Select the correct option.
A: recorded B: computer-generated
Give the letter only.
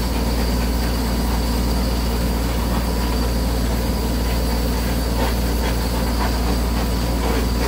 A